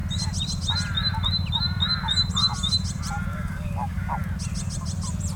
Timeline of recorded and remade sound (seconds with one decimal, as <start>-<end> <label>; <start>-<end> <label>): 0.0-3.3 recorded; 3.3-4.2 remade; 4.2-5.4 recorded